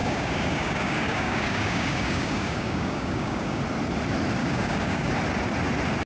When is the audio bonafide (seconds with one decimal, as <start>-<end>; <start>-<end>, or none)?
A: 3.6-4.4; 5.1-6.1